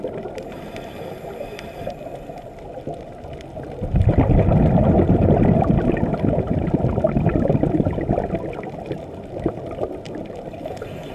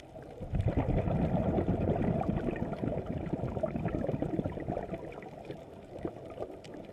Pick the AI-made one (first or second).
second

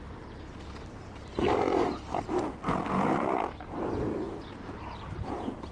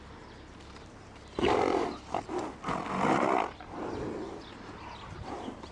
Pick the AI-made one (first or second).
first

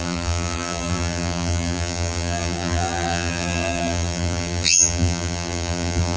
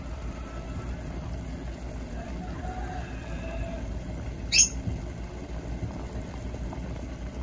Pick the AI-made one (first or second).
first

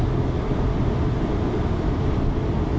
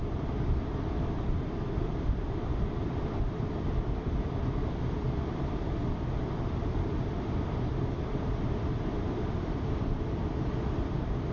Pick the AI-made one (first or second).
second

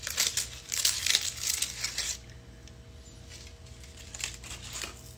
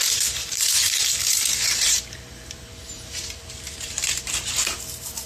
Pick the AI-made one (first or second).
second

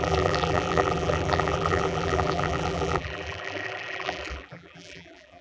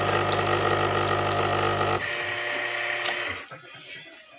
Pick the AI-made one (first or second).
first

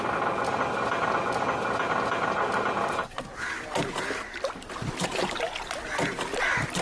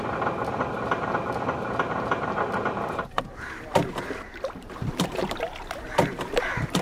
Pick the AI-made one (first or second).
second